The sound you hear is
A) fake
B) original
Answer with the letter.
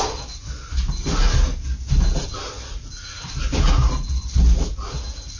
B